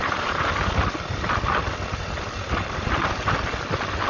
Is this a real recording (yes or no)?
yes